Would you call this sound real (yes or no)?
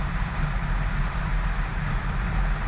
yes